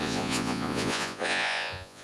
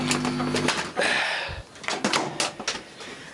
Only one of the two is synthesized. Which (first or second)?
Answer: first